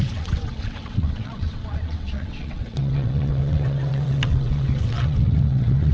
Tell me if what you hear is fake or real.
fake